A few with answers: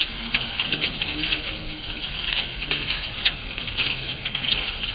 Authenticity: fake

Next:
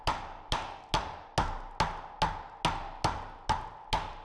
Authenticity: real